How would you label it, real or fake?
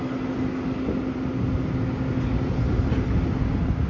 real